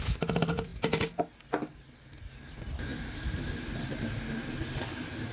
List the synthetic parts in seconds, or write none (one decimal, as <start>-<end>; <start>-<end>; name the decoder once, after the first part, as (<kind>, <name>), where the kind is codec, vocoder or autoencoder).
2.9-4.5 (vocoder, BigVGAN v2)